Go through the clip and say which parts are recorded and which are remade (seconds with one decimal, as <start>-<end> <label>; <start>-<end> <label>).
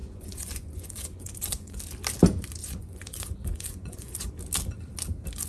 0.0-1.8 remade; 1.8-2.6 recorded; 2.6-4.3 remade; 4.3-5.5 recorded